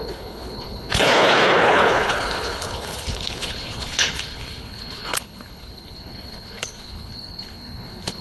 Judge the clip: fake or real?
fake